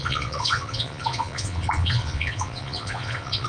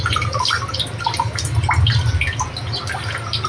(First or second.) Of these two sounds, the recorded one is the second